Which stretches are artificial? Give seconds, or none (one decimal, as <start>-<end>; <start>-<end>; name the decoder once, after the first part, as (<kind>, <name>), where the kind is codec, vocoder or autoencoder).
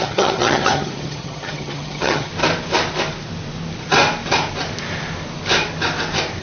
0.0-2.3 (vocoder, HiFi-GAN)